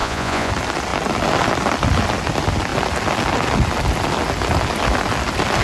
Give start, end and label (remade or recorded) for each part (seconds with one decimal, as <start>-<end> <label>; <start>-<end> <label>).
0.0-0.5 remade; 0.5-5.6 recorded